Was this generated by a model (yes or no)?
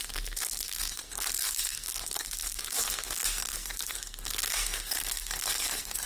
yes